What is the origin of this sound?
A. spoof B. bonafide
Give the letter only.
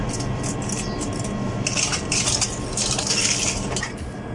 B